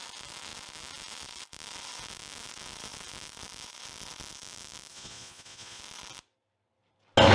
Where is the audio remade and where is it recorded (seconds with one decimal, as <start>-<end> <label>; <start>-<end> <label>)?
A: 0.0-4.9 recorded; 4.9-5.8 remade; 5.8-7.3 recorded

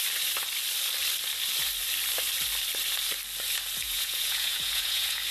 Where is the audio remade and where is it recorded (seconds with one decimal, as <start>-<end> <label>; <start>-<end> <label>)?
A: 0.0-3.8 recorded; 3.8-5.3 remade

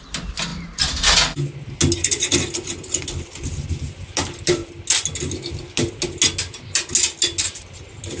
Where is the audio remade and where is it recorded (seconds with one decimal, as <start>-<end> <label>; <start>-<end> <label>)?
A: 0.0-8.2 recorded

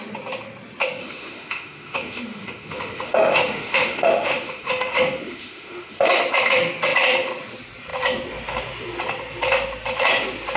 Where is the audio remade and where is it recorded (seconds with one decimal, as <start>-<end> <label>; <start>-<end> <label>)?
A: 0.0-1.0 recorded; 1.0-6.1 remade; 6.1-10.6 recorded